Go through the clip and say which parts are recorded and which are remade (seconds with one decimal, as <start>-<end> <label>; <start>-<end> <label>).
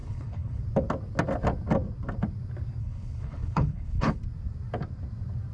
0.0-0.6 remade; 0.6-2.8 recorded; 2.8-4.2 remade; 4.2-5.5 recorded